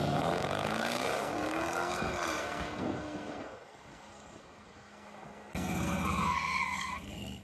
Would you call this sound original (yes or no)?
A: no